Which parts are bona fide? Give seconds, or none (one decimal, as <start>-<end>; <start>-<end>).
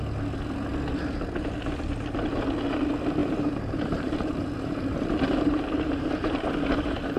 0.0-3.2; 6.5-7.2